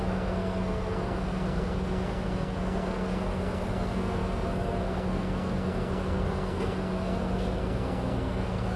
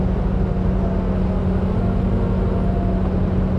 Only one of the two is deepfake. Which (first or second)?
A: first